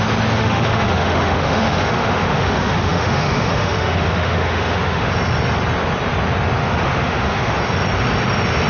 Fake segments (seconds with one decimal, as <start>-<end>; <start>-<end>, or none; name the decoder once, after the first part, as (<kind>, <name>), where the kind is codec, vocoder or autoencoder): 0.4-5.1 (autoencoder, DAC-VAE); 6.6-7.5